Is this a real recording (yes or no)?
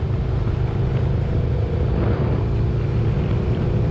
no